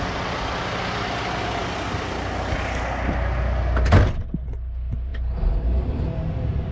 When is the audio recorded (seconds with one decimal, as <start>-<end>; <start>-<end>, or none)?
0.0-6.7